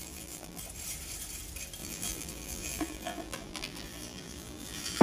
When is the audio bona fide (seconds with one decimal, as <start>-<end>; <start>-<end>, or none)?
0.6-1.8